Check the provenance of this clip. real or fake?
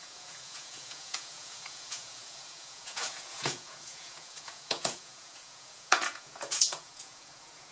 fake